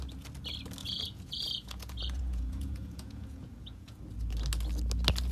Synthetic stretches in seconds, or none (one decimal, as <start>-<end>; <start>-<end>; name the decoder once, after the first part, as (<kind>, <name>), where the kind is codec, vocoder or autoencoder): 0.8-4.0 (vocoder, Vocos)